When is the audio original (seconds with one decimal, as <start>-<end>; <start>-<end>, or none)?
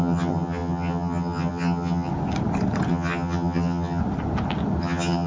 2.1-2.9; 4.0-4.8